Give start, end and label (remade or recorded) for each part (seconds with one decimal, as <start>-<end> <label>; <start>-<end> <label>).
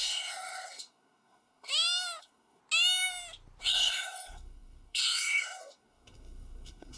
0.0-1.7 remade; 1.7-2.2 recorded; 2.2-2.6 remade; 2.6-3.6 recorded; 3.6-7.0 remade